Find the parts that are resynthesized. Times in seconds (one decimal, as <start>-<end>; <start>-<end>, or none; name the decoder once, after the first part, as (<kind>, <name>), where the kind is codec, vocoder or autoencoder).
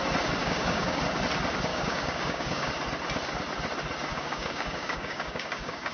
0.4-1.0 (codec, DAC); 1.7-2.7; 4.1-5.9